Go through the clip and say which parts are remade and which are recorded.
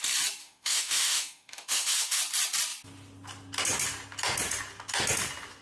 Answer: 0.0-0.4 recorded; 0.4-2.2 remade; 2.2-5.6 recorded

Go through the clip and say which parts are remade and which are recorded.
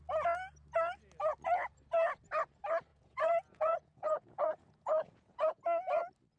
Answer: 0.0-2.9 recorded; 2.9-5.6 remade; 5.6-6.4 recorded